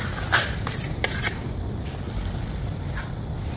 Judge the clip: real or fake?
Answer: real